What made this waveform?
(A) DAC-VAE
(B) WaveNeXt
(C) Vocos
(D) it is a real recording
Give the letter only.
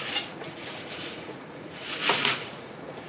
C